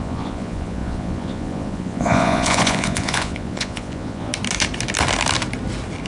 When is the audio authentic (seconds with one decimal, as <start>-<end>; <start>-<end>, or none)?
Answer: 4.3-6.1